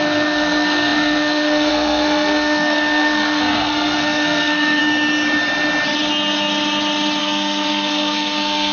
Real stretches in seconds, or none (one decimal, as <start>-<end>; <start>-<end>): 4.8-7.2